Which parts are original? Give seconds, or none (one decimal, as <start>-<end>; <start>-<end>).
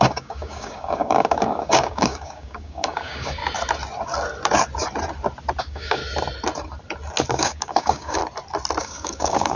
3.4-5.6; 6.0-7.3; 8.2-8.8